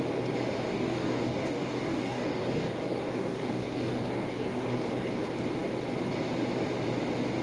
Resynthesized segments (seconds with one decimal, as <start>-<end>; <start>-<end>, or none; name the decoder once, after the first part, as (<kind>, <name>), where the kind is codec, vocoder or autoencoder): 0.7-5.1 (codec, DAC)